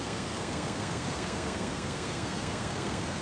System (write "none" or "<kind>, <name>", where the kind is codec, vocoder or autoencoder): codec, SNAC